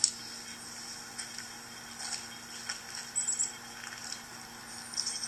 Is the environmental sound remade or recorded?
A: recorded